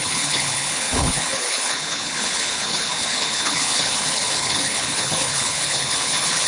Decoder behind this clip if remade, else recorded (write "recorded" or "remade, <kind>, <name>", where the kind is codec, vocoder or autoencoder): remade, codec, HILCodec